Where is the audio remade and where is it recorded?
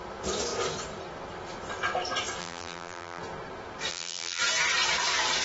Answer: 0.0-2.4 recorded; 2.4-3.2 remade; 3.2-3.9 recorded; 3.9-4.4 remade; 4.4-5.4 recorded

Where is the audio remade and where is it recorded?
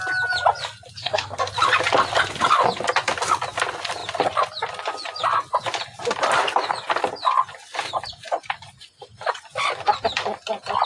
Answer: 0.0-1.0 recorded; 1.0-1.5 remade; 1.5-10.9 recorded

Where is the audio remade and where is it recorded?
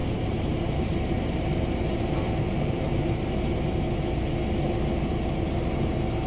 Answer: 0.0-3.8 remade; 3.8-6.3 recorded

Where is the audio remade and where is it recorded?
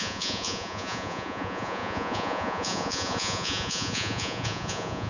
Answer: 0.0-5.1 remade